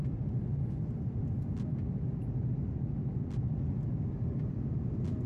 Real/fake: real